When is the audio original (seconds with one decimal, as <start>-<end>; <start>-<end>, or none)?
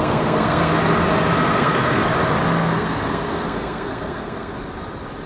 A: 0.7-1.5; 2.0-2.6; 4.5-5.3